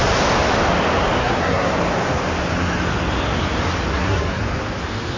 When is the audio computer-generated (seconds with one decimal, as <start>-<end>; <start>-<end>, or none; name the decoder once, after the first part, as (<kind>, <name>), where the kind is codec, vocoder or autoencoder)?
1.2-1.7 (codec, SNAC); 3.9-4.4